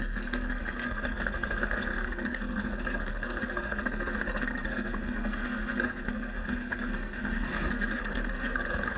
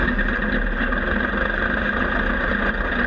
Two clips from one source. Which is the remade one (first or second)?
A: first